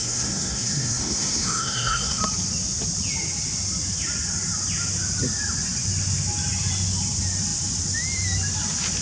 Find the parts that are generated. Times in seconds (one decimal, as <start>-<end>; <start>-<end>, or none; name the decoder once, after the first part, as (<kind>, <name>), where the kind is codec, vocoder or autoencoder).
0.0-2.2 (codec, SNAC)